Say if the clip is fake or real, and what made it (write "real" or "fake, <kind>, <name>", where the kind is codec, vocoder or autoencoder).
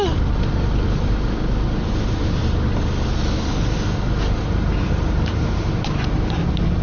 real